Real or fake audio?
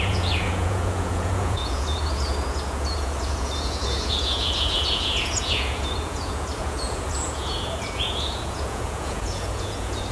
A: fake